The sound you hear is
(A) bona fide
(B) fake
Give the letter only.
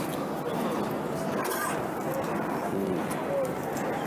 A